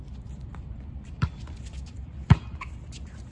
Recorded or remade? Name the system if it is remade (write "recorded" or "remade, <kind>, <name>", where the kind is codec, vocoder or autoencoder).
remade, vocoder, BigVGAN v2